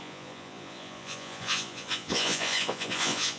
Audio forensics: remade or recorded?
remade